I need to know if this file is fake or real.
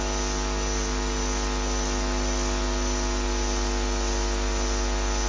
real